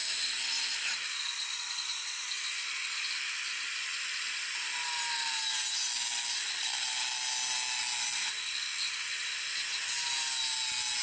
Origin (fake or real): real